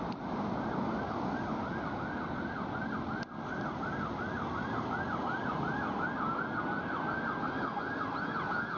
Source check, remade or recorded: recorded